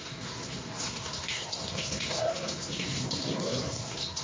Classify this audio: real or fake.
fake